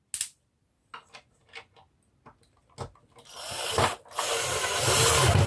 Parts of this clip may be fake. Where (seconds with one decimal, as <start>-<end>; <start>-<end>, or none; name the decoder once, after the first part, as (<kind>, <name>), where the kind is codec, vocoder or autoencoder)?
none